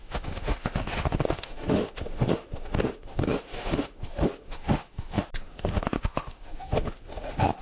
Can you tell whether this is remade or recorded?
remade